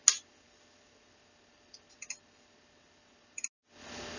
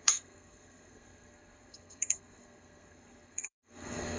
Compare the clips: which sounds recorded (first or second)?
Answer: first